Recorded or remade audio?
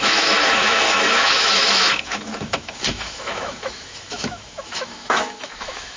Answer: remade